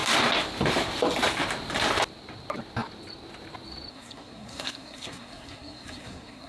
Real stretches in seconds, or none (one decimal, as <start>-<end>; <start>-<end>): 0.0-3.9